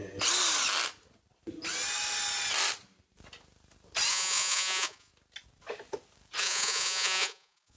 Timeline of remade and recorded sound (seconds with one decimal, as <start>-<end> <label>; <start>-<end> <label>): 0.0-4.1 recorded; 4.1-5.1 remade; 5.1-6.4 recorded; 6.4-7.8 remade